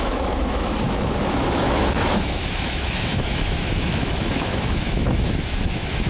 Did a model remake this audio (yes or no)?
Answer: yes